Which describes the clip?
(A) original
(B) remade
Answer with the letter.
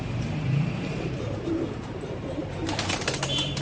B